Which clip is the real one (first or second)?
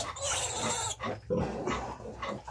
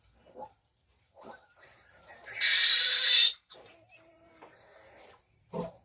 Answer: first